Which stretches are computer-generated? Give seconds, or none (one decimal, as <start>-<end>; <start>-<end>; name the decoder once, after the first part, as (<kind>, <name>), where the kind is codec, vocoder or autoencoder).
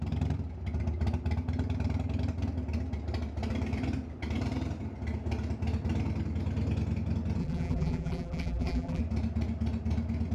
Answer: 7.4-9.0 (vocoder, BigVGAN v2)